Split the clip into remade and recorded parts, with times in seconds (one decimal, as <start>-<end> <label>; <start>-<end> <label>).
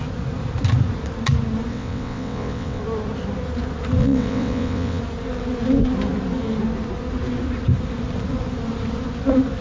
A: 0.0-1.7 recorded; 1.7-2.8 remade; 2.8-4.0 recorded; 4.0-5.0 remade; 5.0-9.6 recorded